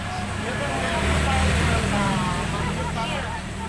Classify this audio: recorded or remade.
remade